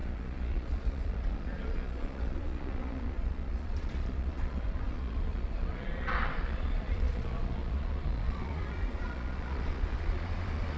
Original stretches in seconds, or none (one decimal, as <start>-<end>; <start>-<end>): none